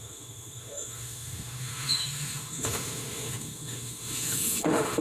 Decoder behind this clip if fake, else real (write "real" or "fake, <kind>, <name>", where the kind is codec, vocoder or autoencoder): fake, autoencoder, DAC-VAE